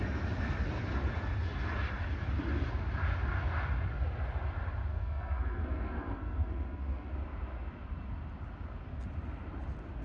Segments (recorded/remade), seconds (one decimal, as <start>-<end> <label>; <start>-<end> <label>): 0.0-4.9 recorded; 4.9-7.1 remade; 7.1-10.0 recorded